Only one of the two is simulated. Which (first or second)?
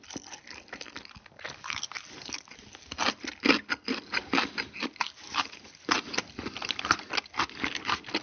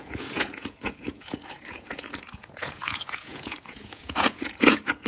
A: second